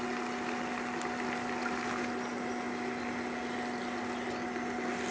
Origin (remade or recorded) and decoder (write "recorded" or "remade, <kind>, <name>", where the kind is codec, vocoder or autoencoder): recorded